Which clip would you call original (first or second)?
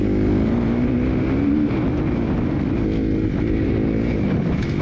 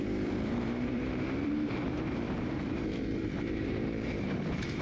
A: first